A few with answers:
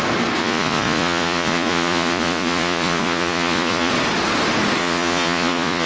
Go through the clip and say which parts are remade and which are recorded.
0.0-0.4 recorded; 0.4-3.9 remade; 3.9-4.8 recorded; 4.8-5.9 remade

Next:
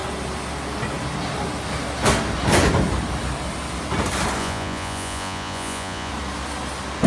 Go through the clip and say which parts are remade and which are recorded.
0.0-4.4 recorded; 4.4-6.1 remade; 6.1-7.1 recorded

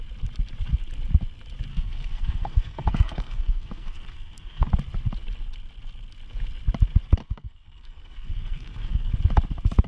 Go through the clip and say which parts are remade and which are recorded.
0.0-1.7 recorded; 1.7-4.7 remade; 4.7-7.2 recorded; 7.2-9.1 remade; 9.1-9.9 recorded

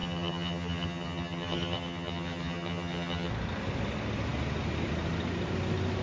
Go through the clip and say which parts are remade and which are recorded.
0.0-3.3 remade; 3.3-6.0 recorded

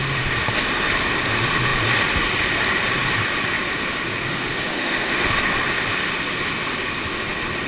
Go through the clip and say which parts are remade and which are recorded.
0.0-4.7 recorded; 4.7-5.3 remade; 5.3-7.7 recorded

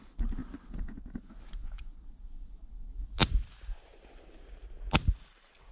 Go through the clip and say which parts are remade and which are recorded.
0.0-5.7 recorded